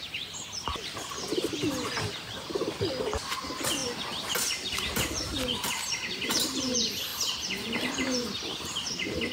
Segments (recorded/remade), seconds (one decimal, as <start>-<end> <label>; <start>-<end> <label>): 0.0-9.3 recorded